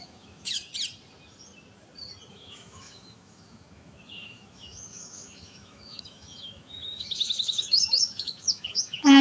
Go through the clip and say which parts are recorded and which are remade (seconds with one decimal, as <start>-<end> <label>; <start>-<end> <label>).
0.0-0.7 remade; 0.7-2.3 recorded; 2.3-9.2 remade